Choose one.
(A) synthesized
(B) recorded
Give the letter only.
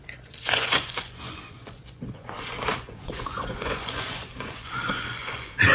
A